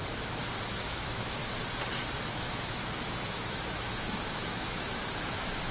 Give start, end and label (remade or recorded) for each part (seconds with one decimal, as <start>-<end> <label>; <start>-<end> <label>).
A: 0.0-0.8 recorded; 0.8-1.4 remade; 1.4-2.2 recorded; 2.2-5.7 remade